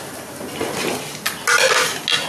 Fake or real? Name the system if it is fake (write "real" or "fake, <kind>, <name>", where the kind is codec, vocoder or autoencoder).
real